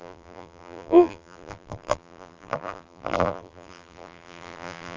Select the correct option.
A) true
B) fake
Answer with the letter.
B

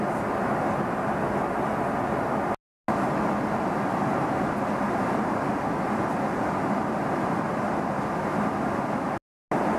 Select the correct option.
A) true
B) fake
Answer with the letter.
A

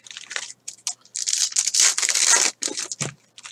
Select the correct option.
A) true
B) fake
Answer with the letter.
A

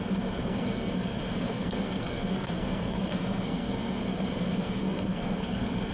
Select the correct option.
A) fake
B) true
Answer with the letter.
A